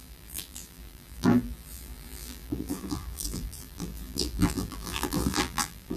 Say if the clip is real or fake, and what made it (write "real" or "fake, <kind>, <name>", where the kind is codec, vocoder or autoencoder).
fake, vocoder, BigVGAN v2